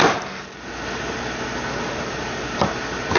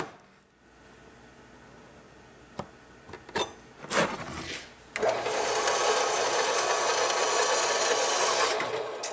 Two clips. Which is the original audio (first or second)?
second